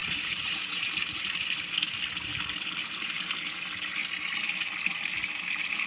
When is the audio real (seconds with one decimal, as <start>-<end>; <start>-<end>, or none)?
0.9-5.9